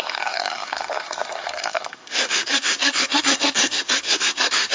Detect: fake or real fake